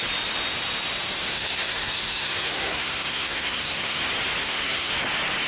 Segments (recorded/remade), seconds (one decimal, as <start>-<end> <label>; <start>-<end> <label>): 0.0-1.3 recorded; 1.3-4.0 remade; 4.0-4.4 recorded; 4.4-4.9 remade; 4.9-5.5 recorded